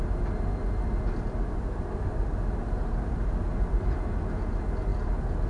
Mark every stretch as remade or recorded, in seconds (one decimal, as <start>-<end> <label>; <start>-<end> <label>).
0.0-5.5 recorded